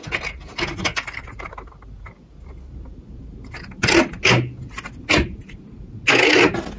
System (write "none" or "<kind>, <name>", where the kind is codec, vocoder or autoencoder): none